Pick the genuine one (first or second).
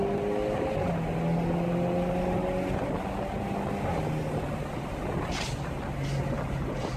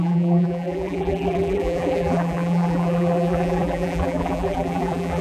first